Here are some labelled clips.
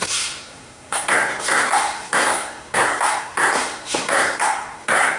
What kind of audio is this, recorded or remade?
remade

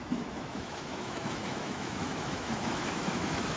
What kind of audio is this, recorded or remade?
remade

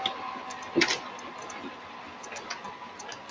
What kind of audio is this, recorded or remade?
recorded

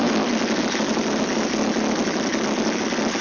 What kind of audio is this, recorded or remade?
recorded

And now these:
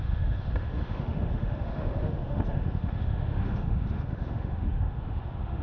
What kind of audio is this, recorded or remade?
remade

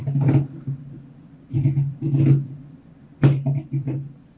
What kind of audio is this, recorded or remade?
recorded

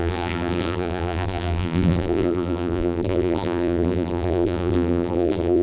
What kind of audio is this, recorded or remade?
remade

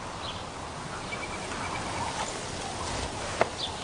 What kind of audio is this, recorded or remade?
recorded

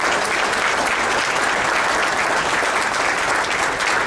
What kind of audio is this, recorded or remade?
recorded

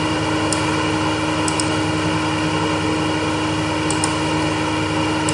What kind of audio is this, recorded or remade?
recorded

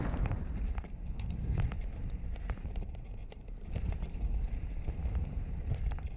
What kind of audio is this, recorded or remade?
remade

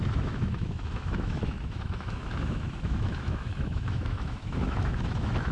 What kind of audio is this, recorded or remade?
remade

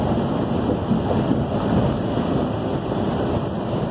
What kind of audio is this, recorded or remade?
recorded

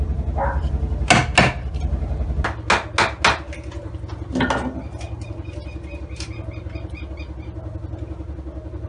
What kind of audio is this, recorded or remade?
recorded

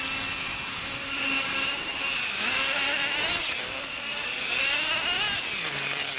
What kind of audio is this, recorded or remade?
recorded